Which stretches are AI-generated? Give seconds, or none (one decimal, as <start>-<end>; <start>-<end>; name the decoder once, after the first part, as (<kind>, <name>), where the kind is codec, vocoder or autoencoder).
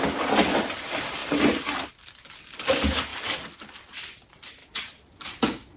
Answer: none